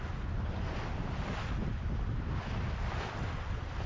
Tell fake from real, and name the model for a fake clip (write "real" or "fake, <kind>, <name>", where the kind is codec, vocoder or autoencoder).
real